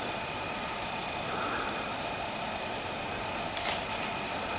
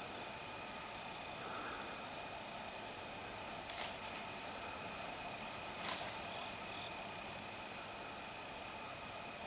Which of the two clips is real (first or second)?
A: second